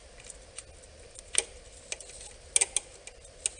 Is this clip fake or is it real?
real